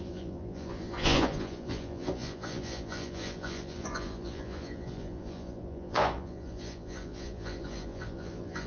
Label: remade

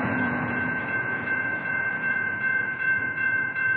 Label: remade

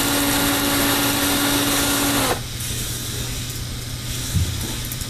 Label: recorded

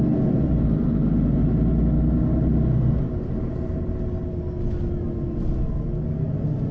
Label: recorded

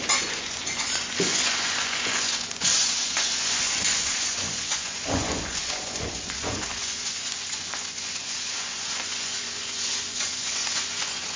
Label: remade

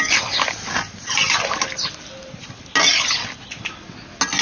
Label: recorded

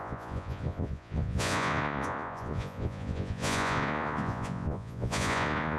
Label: remade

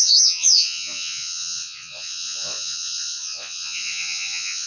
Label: remade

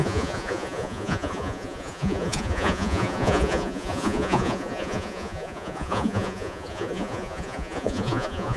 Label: remade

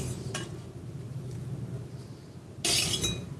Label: recorded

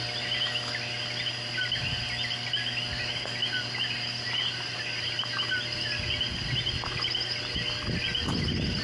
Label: recorded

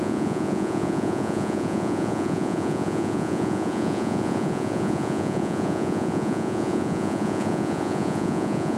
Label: remade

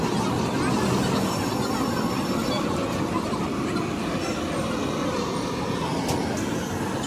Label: recorded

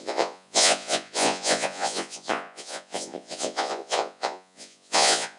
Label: remade